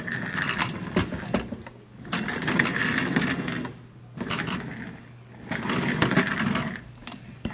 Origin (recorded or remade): recorded